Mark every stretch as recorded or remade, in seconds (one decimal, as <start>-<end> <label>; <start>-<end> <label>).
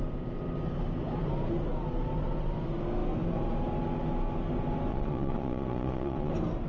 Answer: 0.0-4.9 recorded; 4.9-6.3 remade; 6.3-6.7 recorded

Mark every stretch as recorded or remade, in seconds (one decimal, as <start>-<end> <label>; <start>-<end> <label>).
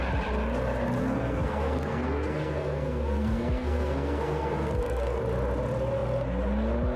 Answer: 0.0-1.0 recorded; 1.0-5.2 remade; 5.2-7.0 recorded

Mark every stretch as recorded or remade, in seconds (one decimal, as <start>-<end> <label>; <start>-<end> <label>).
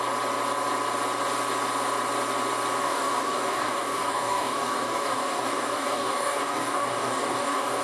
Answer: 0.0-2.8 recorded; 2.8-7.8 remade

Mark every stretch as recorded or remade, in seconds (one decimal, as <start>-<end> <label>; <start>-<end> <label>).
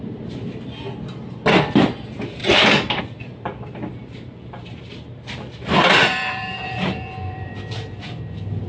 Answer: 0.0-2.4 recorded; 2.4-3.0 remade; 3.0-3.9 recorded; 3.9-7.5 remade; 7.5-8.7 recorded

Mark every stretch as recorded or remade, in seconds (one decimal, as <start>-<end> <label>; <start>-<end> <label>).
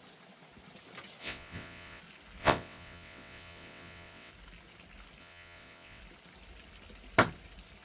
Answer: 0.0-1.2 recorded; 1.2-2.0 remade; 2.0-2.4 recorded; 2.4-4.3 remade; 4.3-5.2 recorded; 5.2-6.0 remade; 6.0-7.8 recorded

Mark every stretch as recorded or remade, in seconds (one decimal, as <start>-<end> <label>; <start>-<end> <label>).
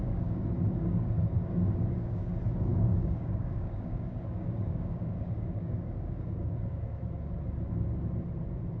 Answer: 0.0-2.3 remade; 2.3-2.7 recorded; 2.7-7.0 remade; 7.0-8.8 recorded